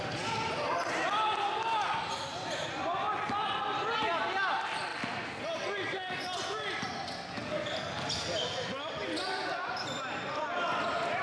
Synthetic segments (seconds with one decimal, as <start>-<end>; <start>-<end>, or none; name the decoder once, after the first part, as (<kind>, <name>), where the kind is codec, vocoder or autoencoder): none